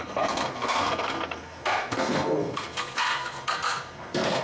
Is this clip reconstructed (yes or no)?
yes